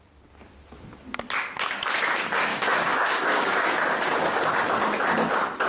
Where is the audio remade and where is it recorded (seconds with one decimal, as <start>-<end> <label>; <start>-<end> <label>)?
0.0-2.5 recorded; 2.5-4.4 remade; 4.4-5.7 recorded